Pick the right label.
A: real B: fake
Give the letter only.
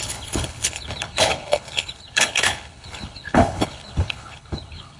B